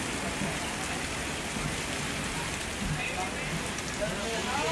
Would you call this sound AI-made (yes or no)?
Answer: no